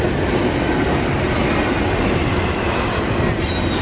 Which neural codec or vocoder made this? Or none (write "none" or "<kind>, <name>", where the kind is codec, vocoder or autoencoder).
none